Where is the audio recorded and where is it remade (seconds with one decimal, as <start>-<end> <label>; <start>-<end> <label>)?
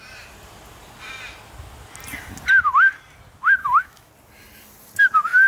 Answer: 0.0-3.6 recorded; 3.6-4.1 remade; 4.1-5.5 recorded